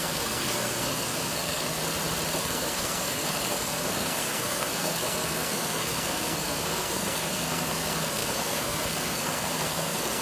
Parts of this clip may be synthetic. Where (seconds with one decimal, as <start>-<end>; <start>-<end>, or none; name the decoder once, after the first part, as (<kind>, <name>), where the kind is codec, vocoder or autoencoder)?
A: 0.0-1.8 (codec, SNAC); 2.4-10.2